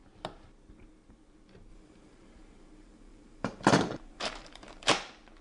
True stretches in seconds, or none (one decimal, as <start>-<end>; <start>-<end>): 0.0-1.7; 4.9-5.4